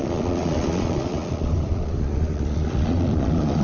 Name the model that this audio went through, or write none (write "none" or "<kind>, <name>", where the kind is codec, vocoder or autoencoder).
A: vocoder, Vocos